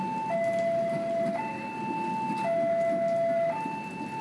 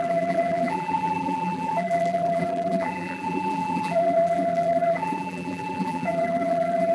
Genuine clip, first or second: first